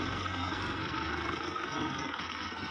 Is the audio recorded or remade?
remade